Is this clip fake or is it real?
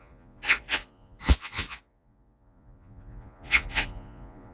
fake